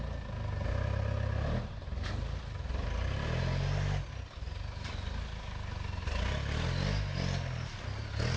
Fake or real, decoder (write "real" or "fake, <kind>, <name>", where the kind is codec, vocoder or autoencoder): real